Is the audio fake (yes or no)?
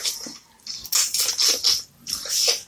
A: no